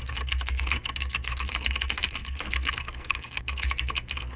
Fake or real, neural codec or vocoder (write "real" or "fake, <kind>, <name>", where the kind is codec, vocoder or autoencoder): fake, codec, SNAC